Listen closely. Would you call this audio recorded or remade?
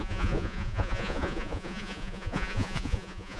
remade